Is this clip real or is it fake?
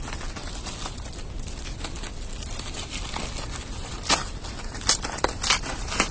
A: real